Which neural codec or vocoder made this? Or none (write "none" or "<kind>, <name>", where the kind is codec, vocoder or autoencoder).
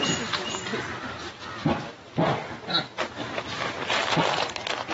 none